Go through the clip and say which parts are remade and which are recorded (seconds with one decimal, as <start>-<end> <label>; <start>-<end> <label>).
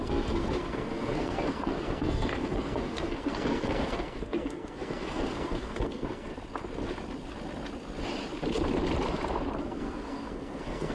0.0-6.3 remade; 6.3-9.6 recorded; 9.6-10.9 remade